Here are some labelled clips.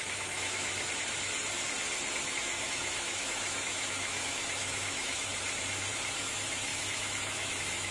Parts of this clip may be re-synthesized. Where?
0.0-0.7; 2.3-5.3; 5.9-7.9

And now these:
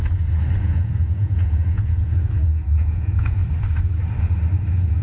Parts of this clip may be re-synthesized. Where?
0.6-3.4

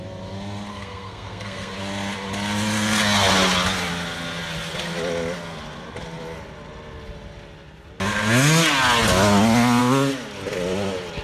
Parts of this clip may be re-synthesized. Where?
0.7-1.7

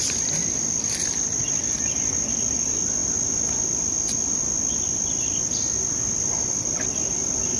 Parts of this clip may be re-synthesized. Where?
none

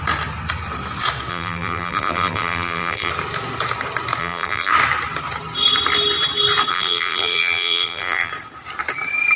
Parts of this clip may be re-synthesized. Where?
1.3-3.1; 4.2-4.7; 6.7-8.3

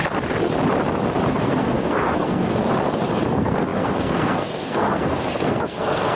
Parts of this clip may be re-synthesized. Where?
1.3-2.6; 3.3-6.2

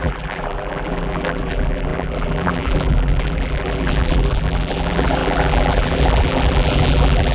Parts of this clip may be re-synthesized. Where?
0.0-7.3

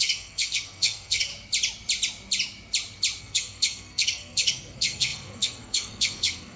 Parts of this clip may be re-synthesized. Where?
0.0-1.3; 3.2-6.6